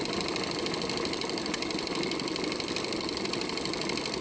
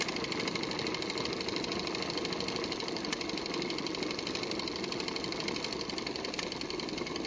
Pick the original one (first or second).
second